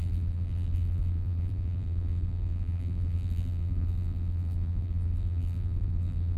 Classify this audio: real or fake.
fake